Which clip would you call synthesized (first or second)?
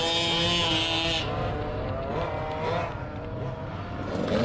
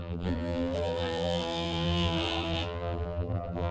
second